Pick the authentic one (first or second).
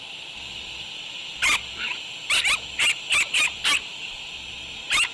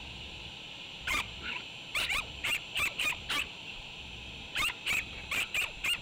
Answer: first